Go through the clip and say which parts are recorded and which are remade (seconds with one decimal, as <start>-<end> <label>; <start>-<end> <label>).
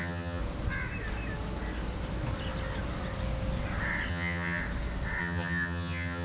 0.0-0.4 remade; 0.4-4.1 recorded; 4.1-4.6 remade; 4.6-5.2 recorded; 5.2-6.2 remade